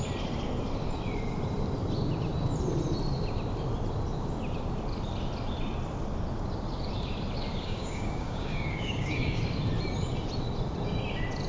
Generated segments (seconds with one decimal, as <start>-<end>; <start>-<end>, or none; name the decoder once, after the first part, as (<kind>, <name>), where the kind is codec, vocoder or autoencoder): 7.5-9.4 (codec, DAC)